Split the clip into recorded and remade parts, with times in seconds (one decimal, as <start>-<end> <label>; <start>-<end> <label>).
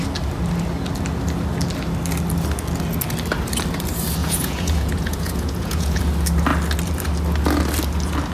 0.0-4.2 recorded; 4.2-6.0 remade; 6.0-8.3 recorded